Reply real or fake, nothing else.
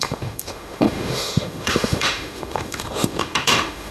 fake